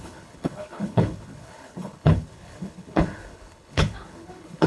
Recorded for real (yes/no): no